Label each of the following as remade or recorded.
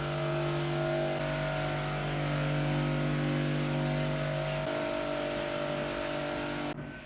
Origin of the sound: recorded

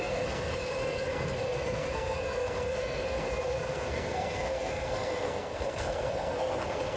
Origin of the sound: remade